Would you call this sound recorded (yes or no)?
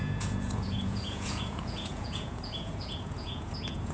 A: no